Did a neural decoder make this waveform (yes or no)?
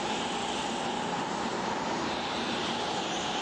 no